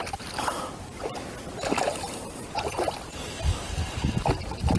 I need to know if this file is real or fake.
real